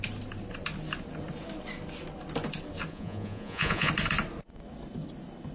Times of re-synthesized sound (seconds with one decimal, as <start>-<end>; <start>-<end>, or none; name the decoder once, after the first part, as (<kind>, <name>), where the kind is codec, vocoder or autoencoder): 2.9-3.9 (vocoder, Vocos)